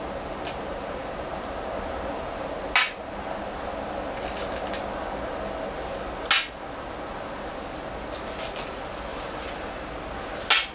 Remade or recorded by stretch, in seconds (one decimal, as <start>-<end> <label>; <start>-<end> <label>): 0.0-9.1 recorded; 9.1-9.9 remade; 9.9-10.7 recorded

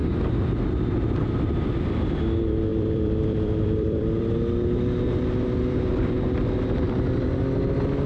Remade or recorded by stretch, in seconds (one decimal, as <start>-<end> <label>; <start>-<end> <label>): 0.0-0.9 remade; 0.9-2.7 recorded; 2.7-4.2 remade; 4.2-5.9 recorded; 5.9-7.4 remade; 7.4-8.1 recorded

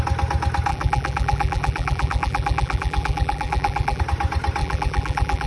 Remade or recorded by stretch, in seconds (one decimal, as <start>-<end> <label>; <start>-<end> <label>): 0.0-0.7 recorded; 0.7-4.0 remade; 4.0-4.6 recorded; 4.6-5.5 remade

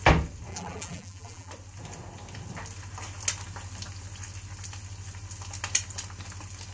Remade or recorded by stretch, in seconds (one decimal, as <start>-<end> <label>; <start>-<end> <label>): 0.0-0.5 recorded; 0.5-1.5 remade; 1.5-6.7 recorded